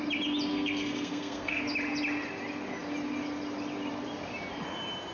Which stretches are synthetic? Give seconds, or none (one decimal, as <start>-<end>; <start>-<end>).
0.5-1.6